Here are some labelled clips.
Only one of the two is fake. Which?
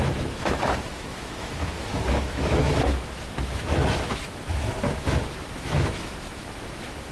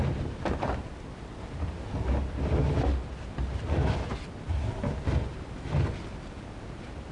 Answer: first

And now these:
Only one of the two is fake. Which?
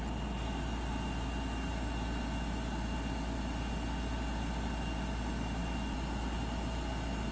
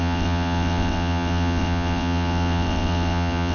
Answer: second